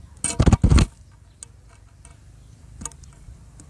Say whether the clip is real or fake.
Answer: real